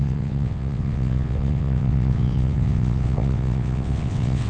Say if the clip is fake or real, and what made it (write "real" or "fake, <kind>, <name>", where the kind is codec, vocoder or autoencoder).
fake, vocoder, WaveNeXt